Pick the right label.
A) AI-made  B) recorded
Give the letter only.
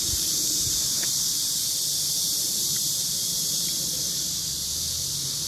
A